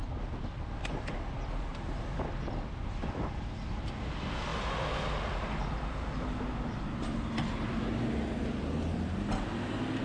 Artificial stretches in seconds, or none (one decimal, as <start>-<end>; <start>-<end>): none